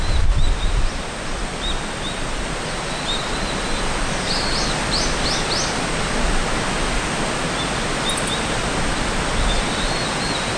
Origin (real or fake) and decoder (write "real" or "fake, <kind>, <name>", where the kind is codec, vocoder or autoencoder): real